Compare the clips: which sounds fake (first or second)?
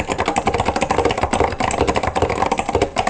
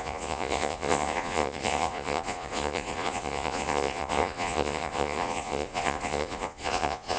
second